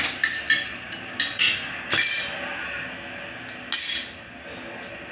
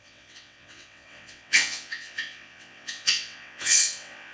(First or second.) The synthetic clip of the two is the second